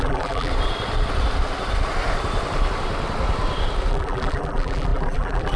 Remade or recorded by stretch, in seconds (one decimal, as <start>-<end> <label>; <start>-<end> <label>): 0.0-0.5 remade; 0.5-3.9 recorded; 3.9-5.6 remade